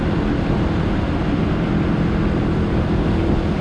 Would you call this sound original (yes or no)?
yes